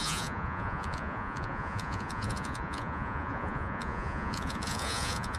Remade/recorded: remade